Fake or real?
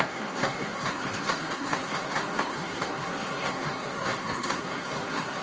fake